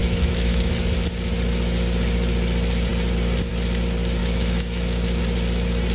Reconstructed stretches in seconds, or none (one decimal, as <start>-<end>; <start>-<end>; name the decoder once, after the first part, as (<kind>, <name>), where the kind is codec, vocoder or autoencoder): 0.0-0.7 (autoencoder, DAC-VAE); 4.2-5.2